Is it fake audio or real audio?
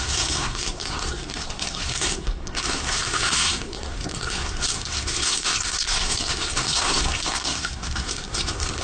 fake